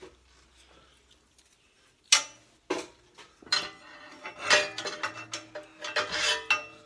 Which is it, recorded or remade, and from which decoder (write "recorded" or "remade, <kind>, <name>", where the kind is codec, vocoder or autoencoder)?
recorded